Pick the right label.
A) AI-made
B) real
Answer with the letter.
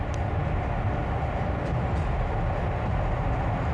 B